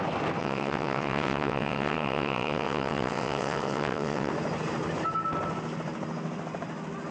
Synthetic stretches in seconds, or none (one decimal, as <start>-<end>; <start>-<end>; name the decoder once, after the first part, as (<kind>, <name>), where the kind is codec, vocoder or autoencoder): 0.4-4.3 (vocoder, WaveNeXt)